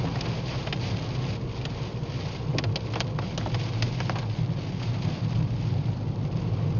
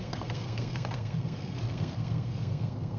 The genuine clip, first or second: first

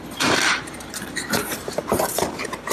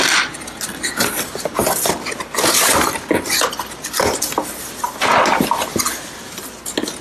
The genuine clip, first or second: second